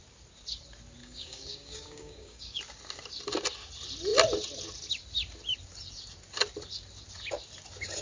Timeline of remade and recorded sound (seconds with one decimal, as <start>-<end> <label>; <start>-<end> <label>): 0.0-1.0 recorded; 1.0-2.6 remade; 2.6-8.0 recorded